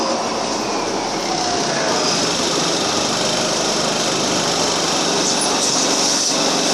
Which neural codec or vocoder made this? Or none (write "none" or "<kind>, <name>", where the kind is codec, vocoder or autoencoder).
none